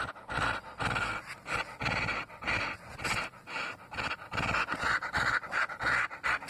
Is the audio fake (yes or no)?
no